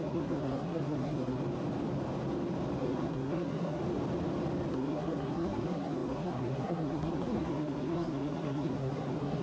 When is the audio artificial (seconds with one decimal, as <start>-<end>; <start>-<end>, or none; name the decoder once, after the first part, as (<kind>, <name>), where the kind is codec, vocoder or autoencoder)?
0.0-1.4 (codec, SNAC); 2.8-3.8; 4.7-9.4